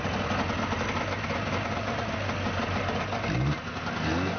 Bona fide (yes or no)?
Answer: yes